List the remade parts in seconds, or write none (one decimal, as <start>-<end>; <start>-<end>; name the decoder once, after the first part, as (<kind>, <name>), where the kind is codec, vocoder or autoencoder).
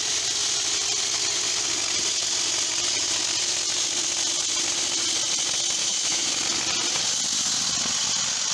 5.8-6.3 (autoencoder, DAC-VAE)